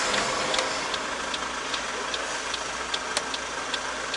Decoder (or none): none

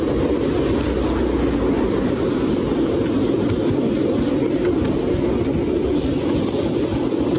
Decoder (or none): none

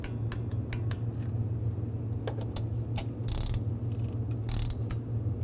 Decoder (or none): none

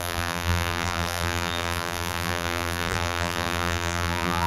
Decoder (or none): vocoder, BigVGAN v2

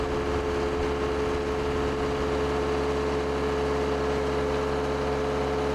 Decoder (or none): none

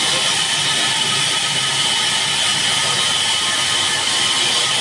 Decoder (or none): none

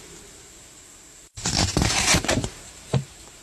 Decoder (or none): vocoder, BigVGAN v2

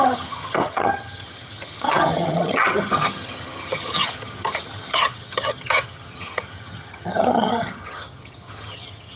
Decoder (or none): vocoder, HiFi-GAN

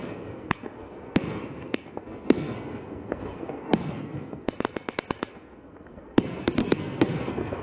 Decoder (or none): codec, SNAC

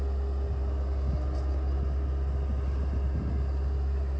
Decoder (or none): none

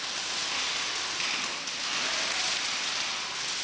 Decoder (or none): none